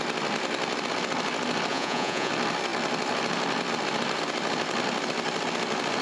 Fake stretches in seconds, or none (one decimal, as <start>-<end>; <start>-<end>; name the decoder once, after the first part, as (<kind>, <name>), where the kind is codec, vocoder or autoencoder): 1.7-2.3 (vocoder, Vocos)